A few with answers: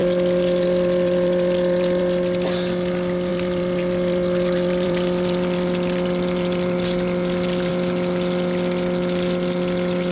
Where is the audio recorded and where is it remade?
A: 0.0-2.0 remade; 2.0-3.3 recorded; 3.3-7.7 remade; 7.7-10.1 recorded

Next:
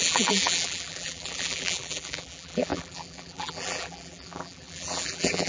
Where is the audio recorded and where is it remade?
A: 0.0-5.5 remade

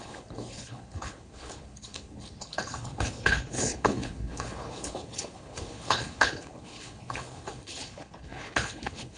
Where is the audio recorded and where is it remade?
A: 0.0-9.2 remade

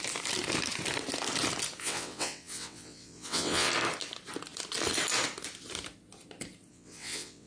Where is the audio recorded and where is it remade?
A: 0.0-1.8 recorded; 1.8-3.7 remade; 3.7-6.7 recorded; 6.7-7.5 remade

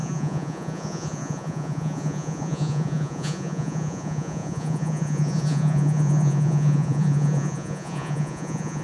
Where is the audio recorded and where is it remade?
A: 0.0-8.8 remade

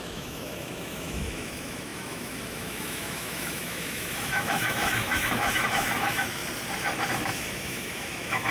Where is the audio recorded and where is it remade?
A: 0.0-6.4 remade; 6.4-7.1 recorded; 7.1-8.5 remade